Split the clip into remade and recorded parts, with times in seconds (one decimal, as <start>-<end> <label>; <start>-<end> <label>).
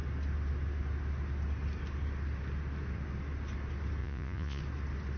0.0-4.0 recorded; 4.0-4.6 remade; 4.6-5.2 recorded